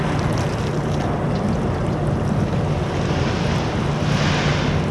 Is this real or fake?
real